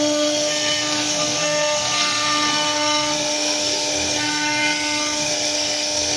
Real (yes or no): no